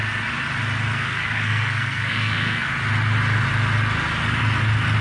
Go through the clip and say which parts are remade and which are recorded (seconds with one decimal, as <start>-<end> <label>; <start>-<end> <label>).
0.0-0.9 recorded; 0.9-2.7 remade; 2.7-5.0 recorded